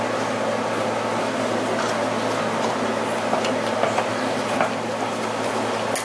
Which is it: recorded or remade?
recorded